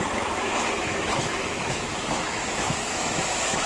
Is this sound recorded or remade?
remade